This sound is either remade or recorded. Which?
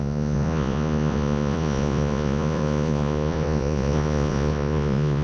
remade